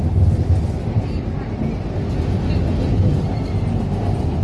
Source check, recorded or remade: recorded